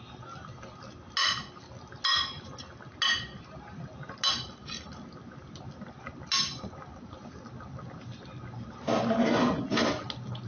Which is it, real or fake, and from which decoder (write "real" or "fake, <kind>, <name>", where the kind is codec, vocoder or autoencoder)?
real